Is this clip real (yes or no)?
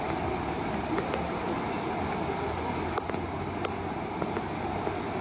yes